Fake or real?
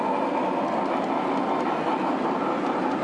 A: real